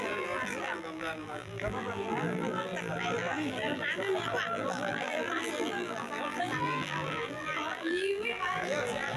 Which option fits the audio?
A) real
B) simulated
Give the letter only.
B